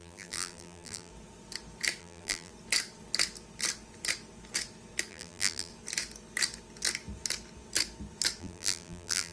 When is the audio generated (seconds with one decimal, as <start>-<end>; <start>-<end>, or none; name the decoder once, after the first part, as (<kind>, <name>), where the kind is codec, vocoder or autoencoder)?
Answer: 0.0-1.1 (vocoder, BigVGAN v2); 2.0-2.5; 5.1-5.7; 8.4-9.3